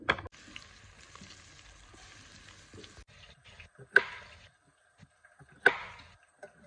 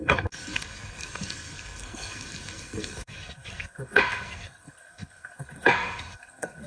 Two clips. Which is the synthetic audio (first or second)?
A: second